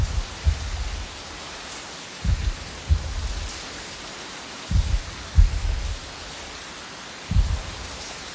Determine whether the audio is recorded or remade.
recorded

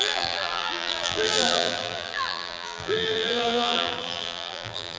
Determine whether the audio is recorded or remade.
remade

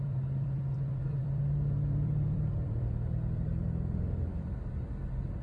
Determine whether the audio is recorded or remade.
remade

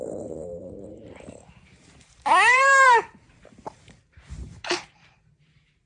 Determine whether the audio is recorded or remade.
remade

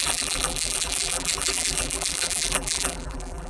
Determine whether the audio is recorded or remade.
remade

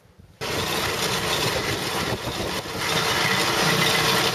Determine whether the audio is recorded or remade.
recorded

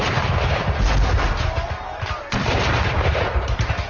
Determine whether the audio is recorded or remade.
recorded